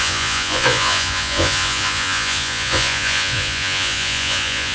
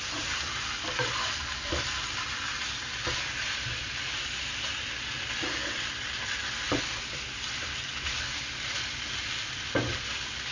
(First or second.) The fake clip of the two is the first